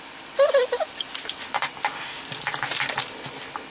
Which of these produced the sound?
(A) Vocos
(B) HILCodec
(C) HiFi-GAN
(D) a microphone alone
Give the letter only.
D